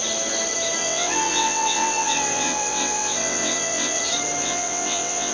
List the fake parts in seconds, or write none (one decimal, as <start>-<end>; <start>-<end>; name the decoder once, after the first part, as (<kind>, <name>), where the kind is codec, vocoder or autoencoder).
0.8-4.0 (vocoder, WaveNeXt); 4.4-5.3

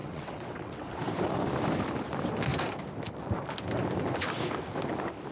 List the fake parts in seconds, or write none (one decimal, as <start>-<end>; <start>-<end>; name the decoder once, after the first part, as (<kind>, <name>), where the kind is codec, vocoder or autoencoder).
0.0-1.0 (vocoder, WaveNeXt)